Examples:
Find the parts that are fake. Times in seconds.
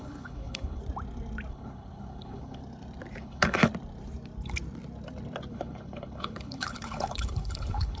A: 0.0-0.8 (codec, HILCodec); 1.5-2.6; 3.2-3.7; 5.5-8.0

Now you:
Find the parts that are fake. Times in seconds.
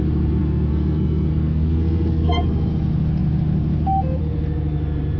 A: 0.4-2.4 (codec, SNAC)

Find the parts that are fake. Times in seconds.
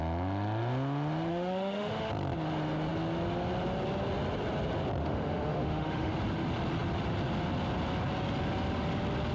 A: 1.3-2.1 (autoencoder, DAC-VAE); 5.0-6.1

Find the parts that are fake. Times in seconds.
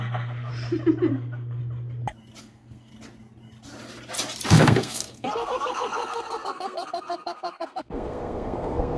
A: 0.0-0.5 (codec, SNAC); 1.1-1.6; 2.4-2.9; 4.5-9.0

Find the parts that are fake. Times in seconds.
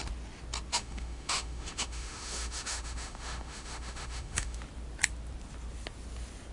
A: 0.7-4.6 (autoencoder, DAC-VAE)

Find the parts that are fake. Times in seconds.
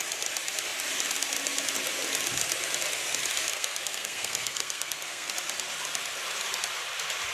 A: 3.5-5.3 (codec, SNAC)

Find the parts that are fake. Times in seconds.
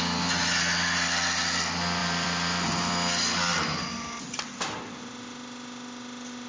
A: 2.0-2.9 (vocoder, BigVGAN v2)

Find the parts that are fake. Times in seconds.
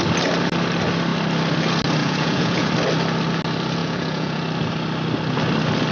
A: 2.0-2.7 (vocoder, Vocos); 3.8-4.4